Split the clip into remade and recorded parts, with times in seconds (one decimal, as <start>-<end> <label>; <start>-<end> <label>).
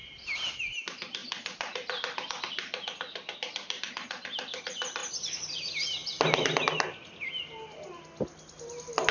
0.0-9.1 recorded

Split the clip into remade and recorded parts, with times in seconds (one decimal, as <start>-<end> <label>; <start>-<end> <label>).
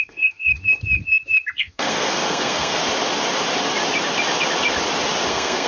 0.0-0.5 remade; 0.5-1.6 recorded; 1.6-2.8 remade; 2.8-5.3 recorded; 5.3-5.7 remade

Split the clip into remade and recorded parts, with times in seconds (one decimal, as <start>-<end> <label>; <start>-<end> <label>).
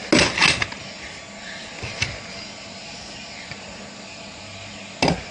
0.0-5.3 recorded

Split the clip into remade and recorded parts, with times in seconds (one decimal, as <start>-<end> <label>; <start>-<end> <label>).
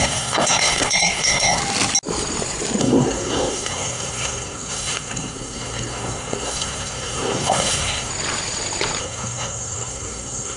0.0-1.6 remade; 1.6-2.8 recorded; 2.8-8.1 remade; 8.1-9.0 recorded; 9.0-10.6 remade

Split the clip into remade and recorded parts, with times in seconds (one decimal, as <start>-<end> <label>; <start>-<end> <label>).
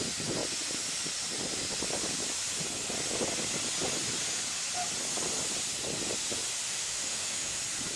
0.0-6.7 recorded; 6.7-7.6 remade; 7.6-8.0 recorded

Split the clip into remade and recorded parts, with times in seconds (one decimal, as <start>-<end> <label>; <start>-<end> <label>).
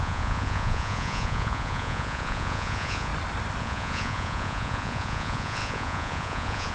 0.0-3.1 remade; 3.1-3.6 recorded; 3.6-6.7 remade